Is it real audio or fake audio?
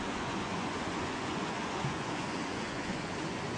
fake